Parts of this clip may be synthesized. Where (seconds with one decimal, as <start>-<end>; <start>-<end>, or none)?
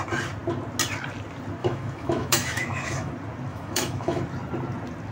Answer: 1.6-3.1; 3.5-4.2